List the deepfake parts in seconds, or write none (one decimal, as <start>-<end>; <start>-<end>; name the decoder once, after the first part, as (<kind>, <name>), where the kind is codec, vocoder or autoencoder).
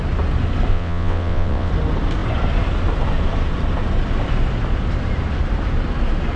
0.7-1.7 (vocoder, WaveNeXt)